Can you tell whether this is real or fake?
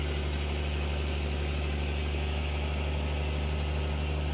real